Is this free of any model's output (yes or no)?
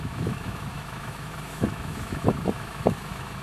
no